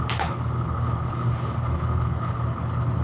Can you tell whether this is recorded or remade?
remade